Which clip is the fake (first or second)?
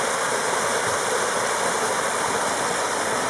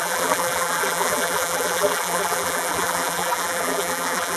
second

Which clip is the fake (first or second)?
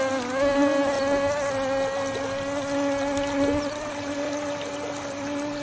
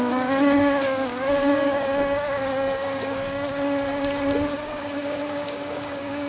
second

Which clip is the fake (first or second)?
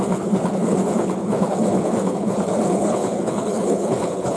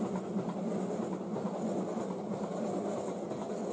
first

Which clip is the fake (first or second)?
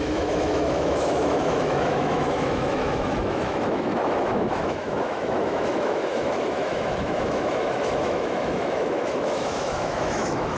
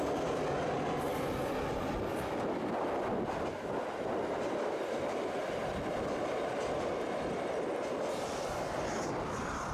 first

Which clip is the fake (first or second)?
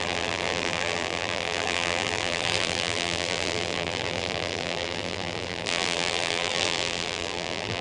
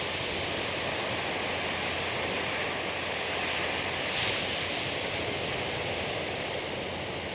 first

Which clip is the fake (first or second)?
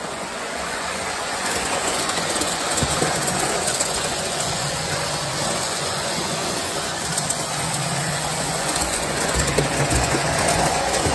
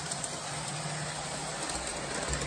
first